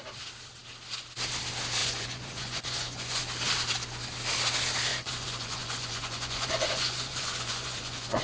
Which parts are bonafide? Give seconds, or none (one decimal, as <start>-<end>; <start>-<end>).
0.0-1.8; 3.2-4.9